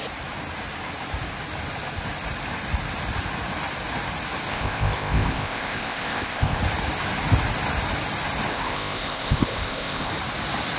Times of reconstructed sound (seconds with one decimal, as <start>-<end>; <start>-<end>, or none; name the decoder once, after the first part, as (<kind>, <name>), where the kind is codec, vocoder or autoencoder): 4.5-6.6 (codec, ZipCodec); 8.5-10.1